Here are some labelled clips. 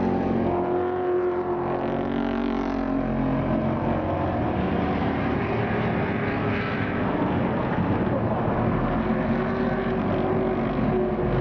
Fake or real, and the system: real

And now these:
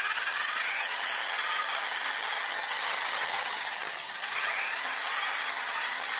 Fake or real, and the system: fake, vocoder, HiFi-GAN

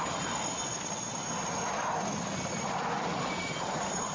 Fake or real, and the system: real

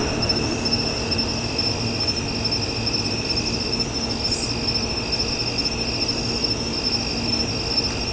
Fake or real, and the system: real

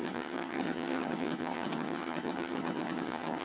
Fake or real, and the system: fake, vocoder, HiFi-GAN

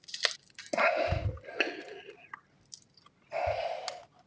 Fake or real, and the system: real